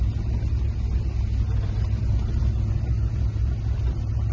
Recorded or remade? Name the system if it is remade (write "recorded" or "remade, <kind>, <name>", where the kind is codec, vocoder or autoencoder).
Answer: recorded